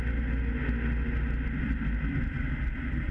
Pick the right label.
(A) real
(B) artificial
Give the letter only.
A